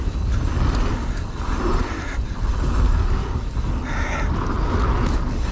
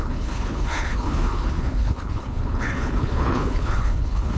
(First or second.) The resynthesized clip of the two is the second